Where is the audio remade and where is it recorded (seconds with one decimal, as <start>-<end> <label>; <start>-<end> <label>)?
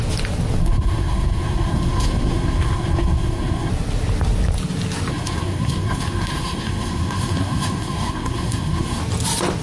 0.0-0.6 recorded; 0.6-3.7 remade; 3.7-5.1 recorded; 5.1-9.0 remade; 9.0-9.6 recorded